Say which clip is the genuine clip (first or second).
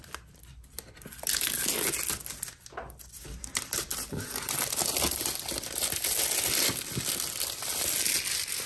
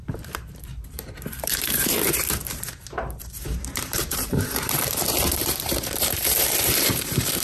first